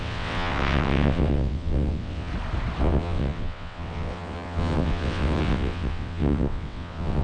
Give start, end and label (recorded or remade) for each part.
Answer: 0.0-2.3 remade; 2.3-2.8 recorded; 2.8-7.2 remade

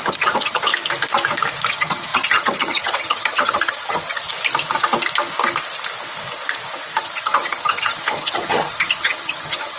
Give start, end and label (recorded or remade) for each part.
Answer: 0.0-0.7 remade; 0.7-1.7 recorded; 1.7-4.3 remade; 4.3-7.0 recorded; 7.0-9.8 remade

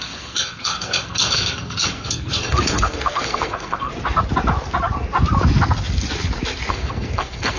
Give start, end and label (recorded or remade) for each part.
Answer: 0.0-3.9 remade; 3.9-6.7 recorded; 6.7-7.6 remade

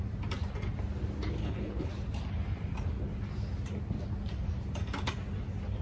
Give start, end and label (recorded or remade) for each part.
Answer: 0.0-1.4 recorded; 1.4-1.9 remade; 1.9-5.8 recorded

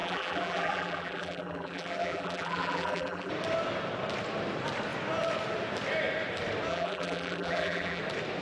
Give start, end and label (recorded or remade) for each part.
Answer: 0.0-3.3 remade; 3.3-6.7 recorded; 6.7-8.0 remade; 8.0-8.4 recorded

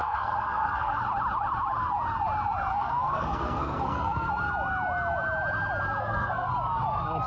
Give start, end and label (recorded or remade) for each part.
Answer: 0.0-1.0 remade; 1.0-2.7 recorded; 2.7-4.3 remade; 4.3-6.0 recorded; 6.0-6.5 remade; 6.5-7.3 recorded